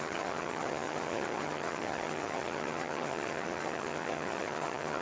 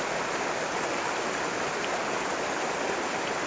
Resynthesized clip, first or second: first